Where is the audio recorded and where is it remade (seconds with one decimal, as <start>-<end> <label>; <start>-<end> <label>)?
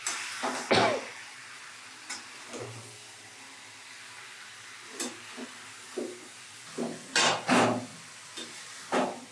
0.0-9.3 recorded